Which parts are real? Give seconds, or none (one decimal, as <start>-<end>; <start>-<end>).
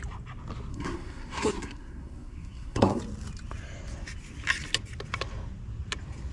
0.0-0.7; 3.0-6.3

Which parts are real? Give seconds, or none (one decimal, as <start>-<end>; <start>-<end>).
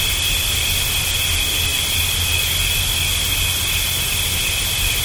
0.0-5.0